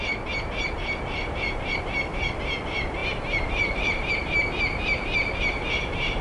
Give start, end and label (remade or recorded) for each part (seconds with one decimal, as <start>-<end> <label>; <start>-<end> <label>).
0.0-3.0 recorded; 3.0-4.1 remade; 4.1-6.2 recorded